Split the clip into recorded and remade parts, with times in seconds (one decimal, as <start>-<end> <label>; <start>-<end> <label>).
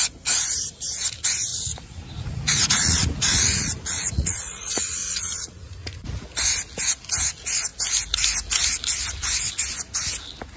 0.0-1.5 recorded; 1.5-6.3 remade; 6.3-10.6 recorded